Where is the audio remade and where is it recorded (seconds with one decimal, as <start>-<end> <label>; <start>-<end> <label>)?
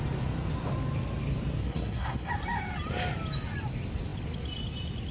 0.0-1.6 recorded; 1.6-2.3 remade; 2.3-5.1 recorded